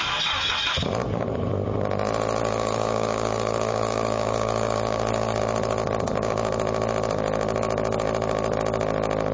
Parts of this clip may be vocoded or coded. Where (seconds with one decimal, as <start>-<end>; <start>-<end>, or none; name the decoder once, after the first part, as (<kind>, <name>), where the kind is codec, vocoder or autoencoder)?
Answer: 2.4-5.4 (codec, DAC)